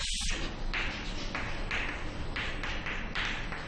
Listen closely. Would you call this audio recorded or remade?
recorded